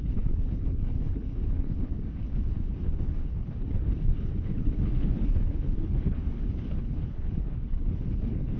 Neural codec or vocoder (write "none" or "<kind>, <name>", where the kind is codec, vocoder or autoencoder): codec, HILCodec